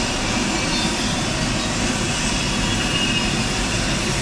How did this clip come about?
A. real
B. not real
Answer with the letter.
A